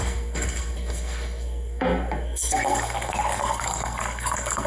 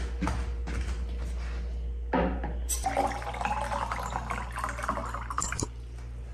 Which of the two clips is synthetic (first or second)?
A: first